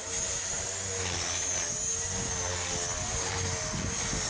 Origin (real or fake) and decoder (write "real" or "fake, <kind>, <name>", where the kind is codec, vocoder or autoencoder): real